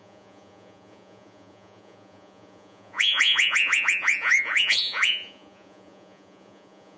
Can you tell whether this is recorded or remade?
remade